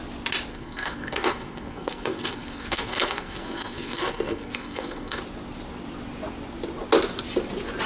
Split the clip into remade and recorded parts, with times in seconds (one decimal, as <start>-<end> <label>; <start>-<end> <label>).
0.0-0.5 recorded; 0.5-5.2 remade; 5.2-7.9 recorded